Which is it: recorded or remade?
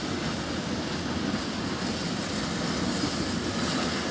recorded